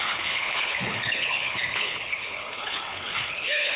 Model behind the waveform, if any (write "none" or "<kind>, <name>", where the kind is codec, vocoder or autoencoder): codec, HILCodec